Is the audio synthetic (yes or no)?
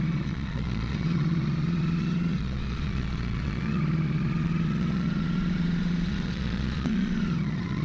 yes